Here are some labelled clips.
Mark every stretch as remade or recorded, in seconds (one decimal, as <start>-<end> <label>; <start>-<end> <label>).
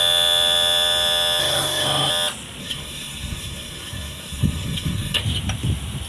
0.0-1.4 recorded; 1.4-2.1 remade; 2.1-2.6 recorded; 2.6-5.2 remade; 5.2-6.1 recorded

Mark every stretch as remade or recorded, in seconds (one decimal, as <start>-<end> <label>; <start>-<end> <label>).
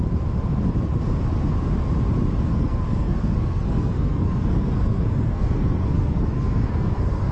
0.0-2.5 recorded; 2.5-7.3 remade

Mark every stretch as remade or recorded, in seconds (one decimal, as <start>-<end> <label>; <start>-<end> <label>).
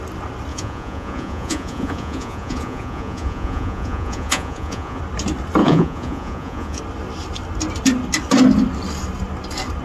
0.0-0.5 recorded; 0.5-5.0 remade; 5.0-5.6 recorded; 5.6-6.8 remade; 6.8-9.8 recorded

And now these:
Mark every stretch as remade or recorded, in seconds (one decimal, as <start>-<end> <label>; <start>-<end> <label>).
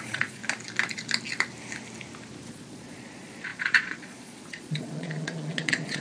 0.0-0.4 remade; 0.4-2.5 recorded; 2.5-6.0 remade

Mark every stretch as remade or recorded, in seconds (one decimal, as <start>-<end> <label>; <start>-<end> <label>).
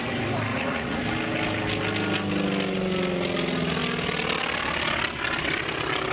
0.0-0.5 recorded; 0.5-1.0 remade; 1.0-6.1 recorded